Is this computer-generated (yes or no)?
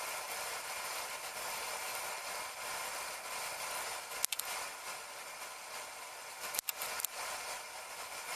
no